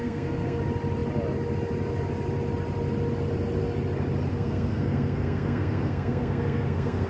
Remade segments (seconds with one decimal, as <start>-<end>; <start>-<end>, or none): 0.0-0.6; 4.3-7.1